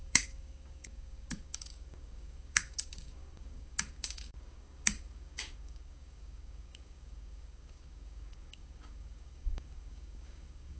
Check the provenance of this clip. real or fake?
fake